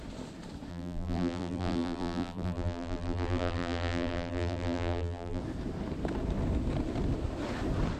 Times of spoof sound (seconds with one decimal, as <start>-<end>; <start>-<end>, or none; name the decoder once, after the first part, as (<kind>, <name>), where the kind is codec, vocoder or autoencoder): 0.7-5.4 (vocoder, BigVGAN v2)

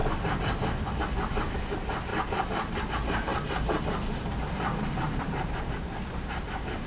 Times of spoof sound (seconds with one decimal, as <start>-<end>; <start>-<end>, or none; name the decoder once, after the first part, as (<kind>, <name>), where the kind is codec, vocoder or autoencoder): 1.0-2.1 (vocoder, BigVGAN v2); 2.9-3.3; 3.8-6.9

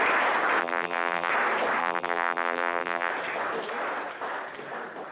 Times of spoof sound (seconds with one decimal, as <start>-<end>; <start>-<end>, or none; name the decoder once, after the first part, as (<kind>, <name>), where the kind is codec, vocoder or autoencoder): 0.6-1.3 (vocoder, BigVGAN v2); 1.8-3.1

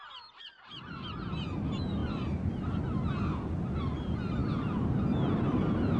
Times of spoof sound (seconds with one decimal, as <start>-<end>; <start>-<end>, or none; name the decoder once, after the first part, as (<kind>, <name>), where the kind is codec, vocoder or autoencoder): none

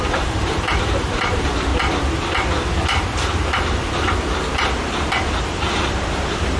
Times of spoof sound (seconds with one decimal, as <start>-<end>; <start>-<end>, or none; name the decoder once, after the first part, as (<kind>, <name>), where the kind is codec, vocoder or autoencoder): 0.0-1.7 (vocoder, BigVGAN v2); 5.4-6.6